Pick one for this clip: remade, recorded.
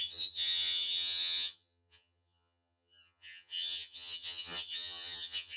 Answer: remade